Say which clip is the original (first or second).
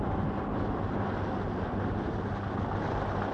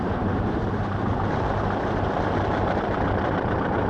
first